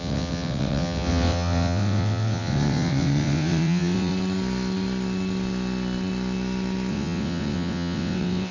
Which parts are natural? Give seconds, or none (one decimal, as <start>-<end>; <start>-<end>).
4.1-6.9